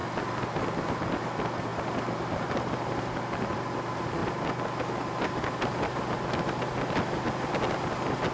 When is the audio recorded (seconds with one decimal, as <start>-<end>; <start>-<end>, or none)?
0.0-8.3